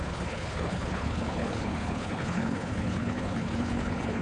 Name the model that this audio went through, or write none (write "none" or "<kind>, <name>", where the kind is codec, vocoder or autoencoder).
codec, HILCodec